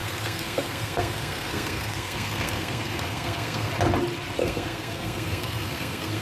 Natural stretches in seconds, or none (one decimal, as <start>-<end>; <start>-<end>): 3.7-4.4